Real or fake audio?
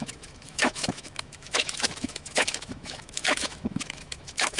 fake